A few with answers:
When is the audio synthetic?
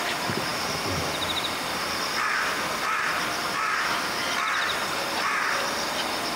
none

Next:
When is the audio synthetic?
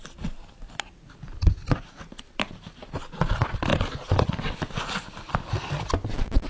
none